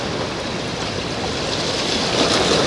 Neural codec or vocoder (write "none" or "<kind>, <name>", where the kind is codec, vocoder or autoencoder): none